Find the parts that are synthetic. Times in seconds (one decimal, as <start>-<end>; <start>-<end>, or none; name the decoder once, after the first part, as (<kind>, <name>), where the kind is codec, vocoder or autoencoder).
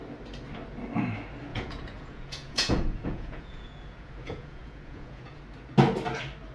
1.5-5.4 (vocoder, Vocos)